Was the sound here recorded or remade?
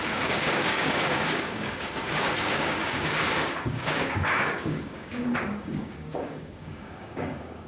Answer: remade